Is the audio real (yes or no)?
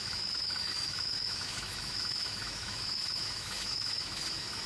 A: no